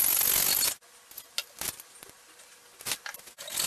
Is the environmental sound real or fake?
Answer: real